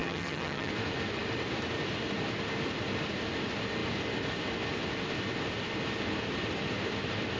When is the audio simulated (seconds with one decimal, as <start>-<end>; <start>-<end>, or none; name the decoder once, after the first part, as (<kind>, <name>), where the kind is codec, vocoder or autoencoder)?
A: 0.0-0.7 (vocoder, HiFi-GAN)